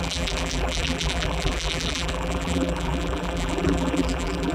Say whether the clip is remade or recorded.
remade